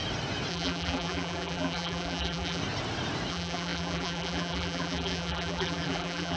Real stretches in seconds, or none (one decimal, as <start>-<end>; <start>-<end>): 0.0-0.5; 2.6-3.3